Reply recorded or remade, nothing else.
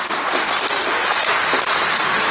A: recorded